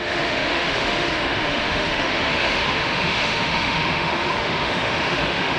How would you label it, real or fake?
fake